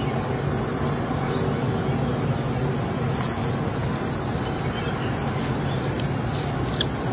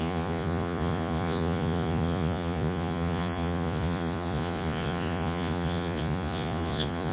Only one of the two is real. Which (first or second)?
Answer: first